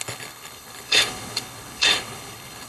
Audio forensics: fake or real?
fake